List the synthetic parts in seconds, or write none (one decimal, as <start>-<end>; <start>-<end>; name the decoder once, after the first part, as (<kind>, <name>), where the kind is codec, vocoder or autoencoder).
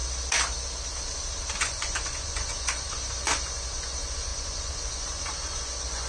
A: 1.6-6.1 (vocoder, Vocos)